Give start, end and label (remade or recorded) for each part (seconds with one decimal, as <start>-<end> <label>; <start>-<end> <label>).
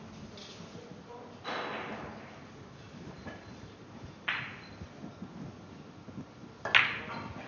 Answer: 0.0-1.9 recorded; 1.9-4.4 remade; 4.4-7.5 recorded